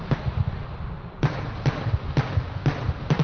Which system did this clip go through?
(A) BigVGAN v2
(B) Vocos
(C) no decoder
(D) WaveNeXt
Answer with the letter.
A